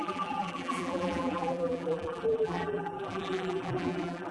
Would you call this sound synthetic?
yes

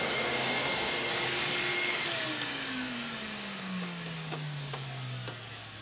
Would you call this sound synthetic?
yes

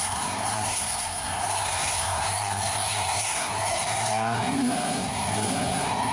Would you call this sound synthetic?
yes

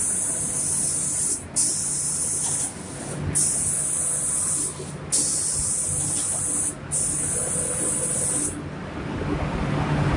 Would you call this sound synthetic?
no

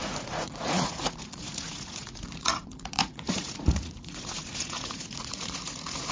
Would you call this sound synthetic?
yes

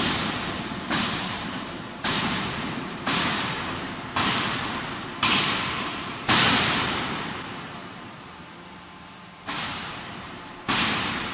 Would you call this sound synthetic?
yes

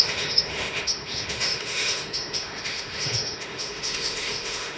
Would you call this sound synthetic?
yes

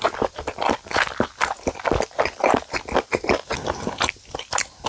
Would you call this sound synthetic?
no